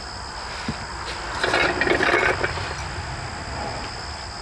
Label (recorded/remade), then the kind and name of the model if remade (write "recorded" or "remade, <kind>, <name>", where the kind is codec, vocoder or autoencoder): recorded